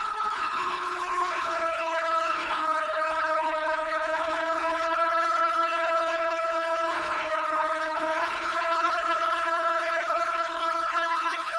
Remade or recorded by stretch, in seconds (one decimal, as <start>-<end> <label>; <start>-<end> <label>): 0.0-11.6 remade